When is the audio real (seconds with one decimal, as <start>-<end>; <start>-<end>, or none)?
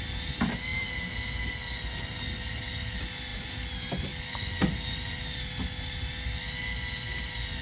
0.0-7.6